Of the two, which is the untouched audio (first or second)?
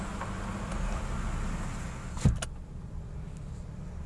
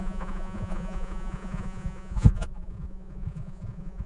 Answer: first